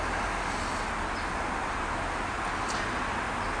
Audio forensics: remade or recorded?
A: recorded